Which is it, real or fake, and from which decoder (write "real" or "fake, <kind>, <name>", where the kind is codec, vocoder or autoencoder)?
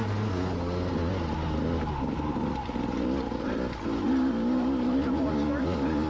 real